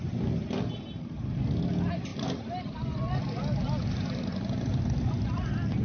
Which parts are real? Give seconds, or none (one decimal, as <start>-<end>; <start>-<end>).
0.0-2.1